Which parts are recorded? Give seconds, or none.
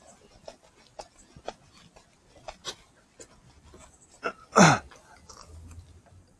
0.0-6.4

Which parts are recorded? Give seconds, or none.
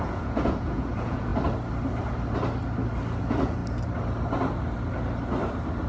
1.3-3.2; 3.6-5.9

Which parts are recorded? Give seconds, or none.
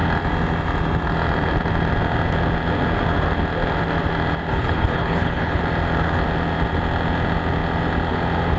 0.0-4.5; 5.6-8.6